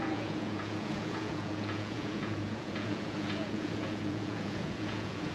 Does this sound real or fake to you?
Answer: fake